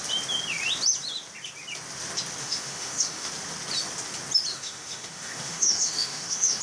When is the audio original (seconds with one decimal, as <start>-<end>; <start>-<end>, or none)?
0.0-2.4; 3.3-4.5